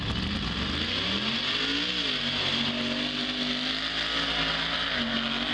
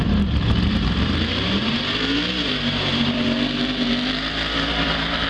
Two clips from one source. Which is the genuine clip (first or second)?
first